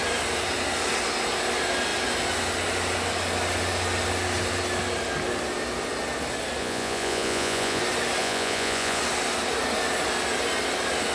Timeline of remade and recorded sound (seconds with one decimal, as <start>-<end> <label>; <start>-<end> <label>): 0.0-6.6 recorded; 6.6-7.8 remade; 7.8-8.2 recorded; 8.2-9.0 remade; 9.0-11.1 recorded